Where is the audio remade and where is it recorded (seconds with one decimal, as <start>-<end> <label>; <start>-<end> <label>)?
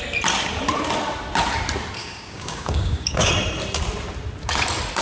0.0-2.0 recorded; 2.0-3.3 remade; 3.3-5.0 recorded